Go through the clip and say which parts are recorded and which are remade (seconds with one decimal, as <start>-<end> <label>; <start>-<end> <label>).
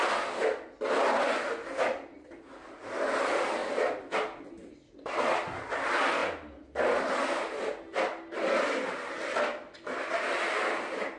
0.0-11.2 recorded